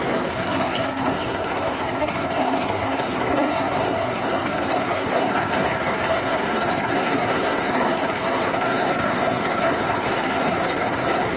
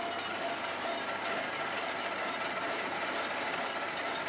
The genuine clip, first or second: second